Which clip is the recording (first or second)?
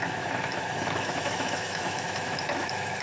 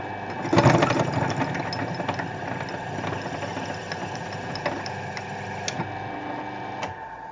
second